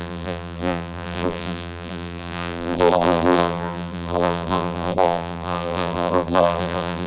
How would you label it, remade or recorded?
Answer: remade